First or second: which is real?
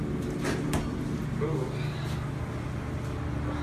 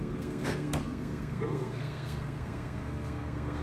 first